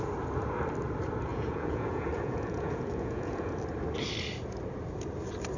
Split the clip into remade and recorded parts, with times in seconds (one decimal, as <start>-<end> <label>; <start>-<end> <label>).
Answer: 0.0-1.3 recorded; 1.3-3.6 remade; 3.6-5.6 recorded